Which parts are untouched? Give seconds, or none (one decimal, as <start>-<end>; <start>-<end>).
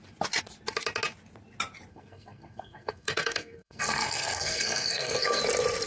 0.0-1.9; 5.4-5.9